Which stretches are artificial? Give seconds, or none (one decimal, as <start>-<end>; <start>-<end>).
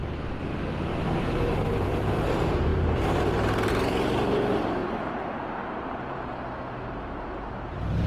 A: 1.2-6.3; 6.9-8.1